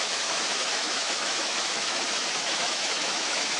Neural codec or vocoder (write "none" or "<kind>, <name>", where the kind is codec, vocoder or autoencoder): autoencoder, DAC-VAE